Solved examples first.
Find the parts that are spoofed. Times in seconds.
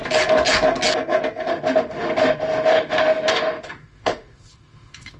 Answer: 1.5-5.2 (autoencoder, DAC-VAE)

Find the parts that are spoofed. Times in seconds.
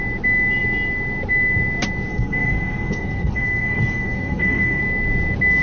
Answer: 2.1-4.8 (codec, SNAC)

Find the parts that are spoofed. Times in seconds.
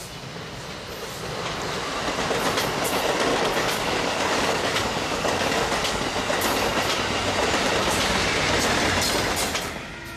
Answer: 3.3-6.0 (codec, DAC)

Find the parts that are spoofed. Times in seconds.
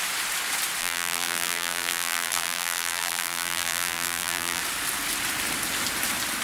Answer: 0.8-4.6 (vocoder, BigVGAN v2)